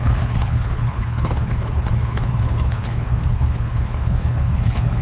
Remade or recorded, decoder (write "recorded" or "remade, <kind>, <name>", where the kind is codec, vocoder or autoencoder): remade, codec, HILCodec